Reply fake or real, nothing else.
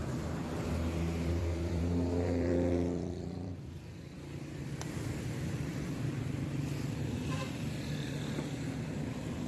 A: fake